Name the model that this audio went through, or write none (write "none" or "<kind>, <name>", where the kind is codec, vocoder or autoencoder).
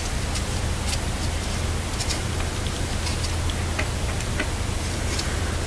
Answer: none